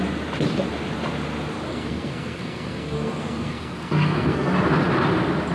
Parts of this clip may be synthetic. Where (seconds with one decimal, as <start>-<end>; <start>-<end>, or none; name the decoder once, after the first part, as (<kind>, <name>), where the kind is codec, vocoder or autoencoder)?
1.7-4.5 (codec, SNAC)